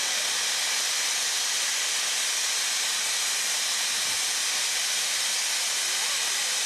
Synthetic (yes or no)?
no